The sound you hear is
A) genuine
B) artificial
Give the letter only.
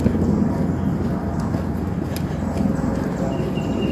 A